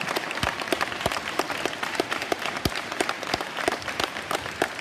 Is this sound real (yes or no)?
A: no